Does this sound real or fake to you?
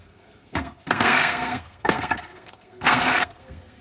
fake